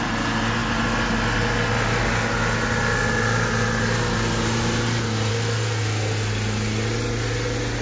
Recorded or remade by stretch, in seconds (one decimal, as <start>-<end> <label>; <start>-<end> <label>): 0.0-7.8 recorded